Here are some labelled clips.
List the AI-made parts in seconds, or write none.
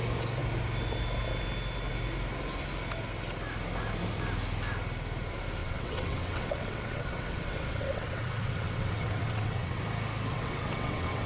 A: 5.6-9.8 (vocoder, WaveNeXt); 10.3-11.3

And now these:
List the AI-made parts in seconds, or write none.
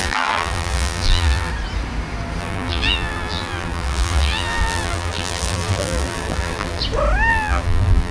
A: 0.0-1.5 (vocoder, BigVGAN v2); 2.4-6.8; 7.3-8.1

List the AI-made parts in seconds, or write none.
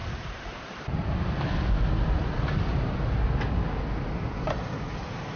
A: 0.0-1.5 (vocoder, BigVGAN v2)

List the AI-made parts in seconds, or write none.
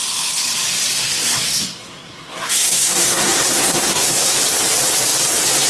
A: 1.0-4.4 (codec, SNAC)